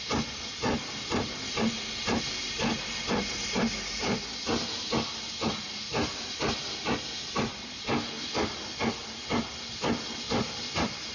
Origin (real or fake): real